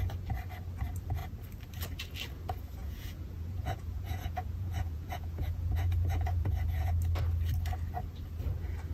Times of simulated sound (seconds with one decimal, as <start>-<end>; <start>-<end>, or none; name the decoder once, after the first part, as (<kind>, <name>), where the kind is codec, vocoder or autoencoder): 2.8-6.9 (vocoder, Vocos)